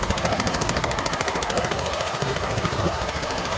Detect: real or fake fake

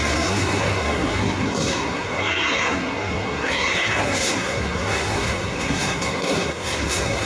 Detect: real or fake fake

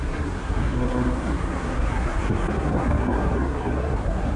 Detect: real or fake fake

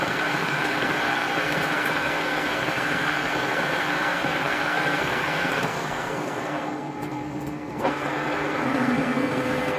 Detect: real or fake fake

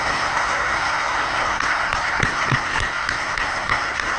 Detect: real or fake fake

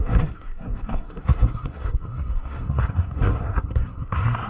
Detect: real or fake fake